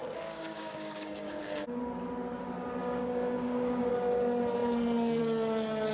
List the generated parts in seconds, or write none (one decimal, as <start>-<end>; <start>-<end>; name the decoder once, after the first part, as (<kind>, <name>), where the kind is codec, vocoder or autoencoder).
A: 0.0-1.8 (codec, DAC); 2.8-3.9